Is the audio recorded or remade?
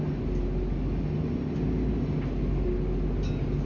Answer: recorded